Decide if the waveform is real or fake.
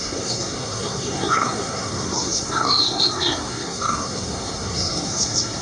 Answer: fake